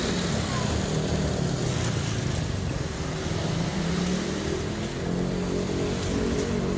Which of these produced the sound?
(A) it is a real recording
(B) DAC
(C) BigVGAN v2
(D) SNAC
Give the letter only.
A